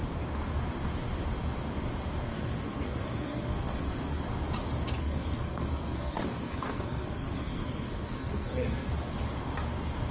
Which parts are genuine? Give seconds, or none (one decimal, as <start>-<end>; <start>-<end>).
0.0-2.3; 4.2-5.0; 8.9-10.1